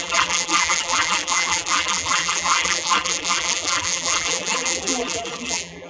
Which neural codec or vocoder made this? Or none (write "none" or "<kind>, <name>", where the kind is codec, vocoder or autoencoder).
vocoder, BigVGAN v2